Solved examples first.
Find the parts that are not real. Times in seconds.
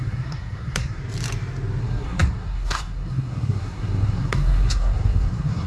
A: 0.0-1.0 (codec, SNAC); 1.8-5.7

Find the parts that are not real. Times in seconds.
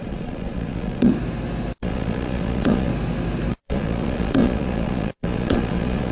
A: 0.0-1.1 (vocoder, Vocos); 1.8-2.9; 3.5-6.1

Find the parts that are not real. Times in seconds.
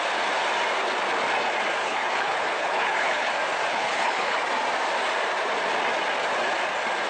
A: 1.8-3.3 (codec, HILCodec); 3.7-4.4